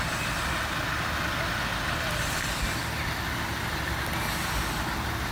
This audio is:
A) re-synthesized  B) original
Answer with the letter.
B